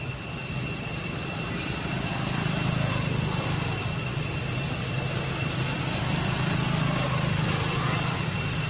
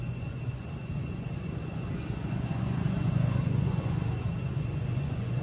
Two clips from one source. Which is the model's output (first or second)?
second